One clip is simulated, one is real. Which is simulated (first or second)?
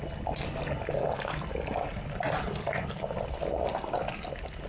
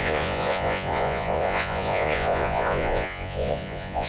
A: second